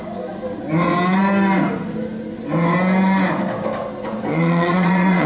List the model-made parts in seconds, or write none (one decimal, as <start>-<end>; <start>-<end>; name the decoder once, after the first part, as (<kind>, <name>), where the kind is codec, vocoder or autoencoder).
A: 4.3-5.3 (vocoder, Vocos)